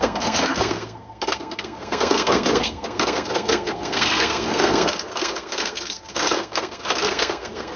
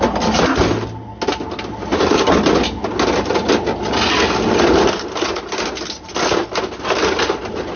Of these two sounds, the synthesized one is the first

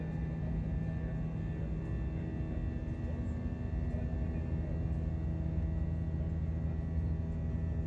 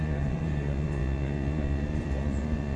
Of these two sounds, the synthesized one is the second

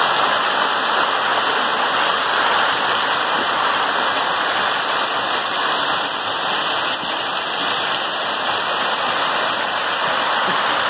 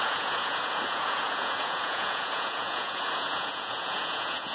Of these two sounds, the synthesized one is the second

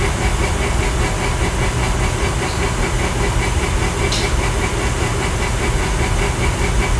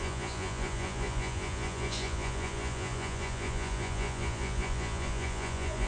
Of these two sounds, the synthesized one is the second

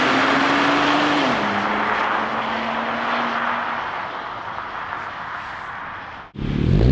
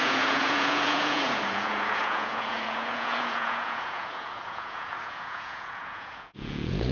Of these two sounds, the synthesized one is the second